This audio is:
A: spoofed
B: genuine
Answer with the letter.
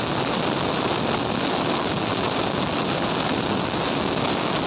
B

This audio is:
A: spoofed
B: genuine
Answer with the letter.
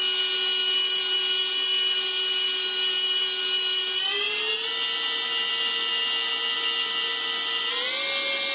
B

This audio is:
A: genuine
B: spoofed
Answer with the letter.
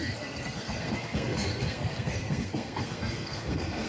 B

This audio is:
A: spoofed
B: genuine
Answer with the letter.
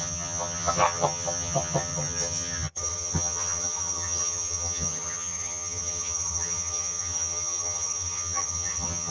A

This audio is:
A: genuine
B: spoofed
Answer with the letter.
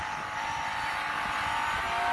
A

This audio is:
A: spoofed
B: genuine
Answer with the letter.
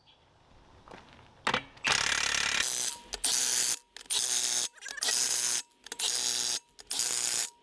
B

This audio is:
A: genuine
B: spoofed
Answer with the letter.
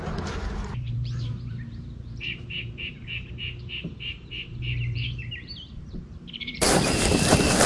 B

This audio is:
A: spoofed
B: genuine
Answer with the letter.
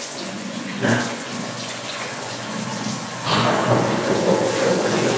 A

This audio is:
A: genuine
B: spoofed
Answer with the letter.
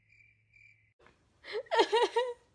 A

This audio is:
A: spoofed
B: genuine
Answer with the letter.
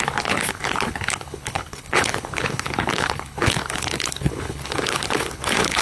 A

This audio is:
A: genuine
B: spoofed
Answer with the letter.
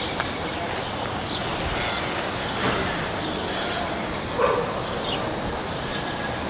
A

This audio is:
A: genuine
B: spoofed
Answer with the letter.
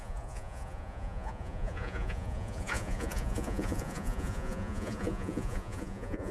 B